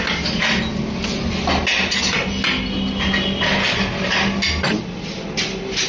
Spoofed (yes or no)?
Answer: no